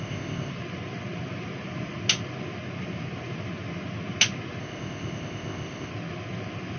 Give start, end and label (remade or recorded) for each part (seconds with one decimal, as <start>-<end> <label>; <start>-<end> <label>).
0.0-0.5 remade; 0.5-4.6 recorded; 4.6-5.9 remade; 5.9-6.8 recorded